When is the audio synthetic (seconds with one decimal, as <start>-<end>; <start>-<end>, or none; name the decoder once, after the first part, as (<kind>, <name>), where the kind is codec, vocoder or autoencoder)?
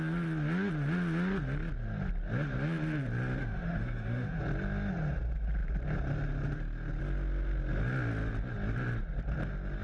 3.4-4.4 (autoencoder, DAC-VAE)